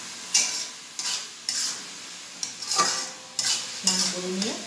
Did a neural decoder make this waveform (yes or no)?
no